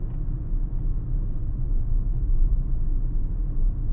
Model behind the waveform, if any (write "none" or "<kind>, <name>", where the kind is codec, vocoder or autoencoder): vocoder, Vocos